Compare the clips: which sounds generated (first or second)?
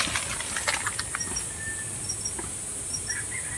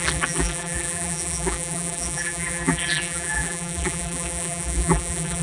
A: second